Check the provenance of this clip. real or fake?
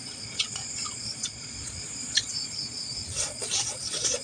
fake